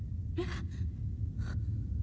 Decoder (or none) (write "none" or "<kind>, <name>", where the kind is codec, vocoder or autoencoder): none